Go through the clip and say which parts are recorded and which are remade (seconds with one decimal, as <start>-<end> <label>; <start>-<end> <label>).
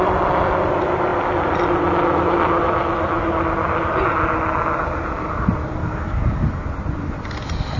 0.0-5.8 recorded; 5.8-6.6 remade; 6.6-7.8 recorded